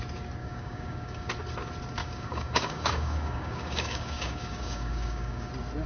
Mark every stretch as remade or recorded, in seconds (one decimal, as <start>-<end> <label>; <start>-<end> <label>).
0.0-0.4 recorded; 0.4-1.3 remade; 1.3-2.0 recorded; 2.0-5.5 remade; 5.5-5.9 recorded